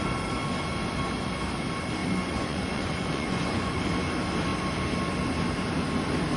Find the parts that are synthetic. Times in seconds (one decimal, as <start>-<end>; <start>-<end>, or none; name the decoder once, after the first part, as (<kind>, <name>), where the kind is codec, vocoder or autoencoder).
2.0-3.8 (vocoder, Vocos)